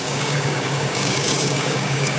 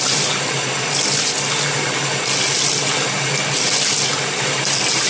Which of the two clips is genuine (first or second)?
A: second